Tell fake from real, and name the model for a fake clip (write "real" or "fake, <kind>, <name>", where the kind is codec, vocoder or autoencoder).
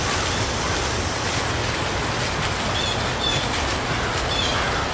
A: real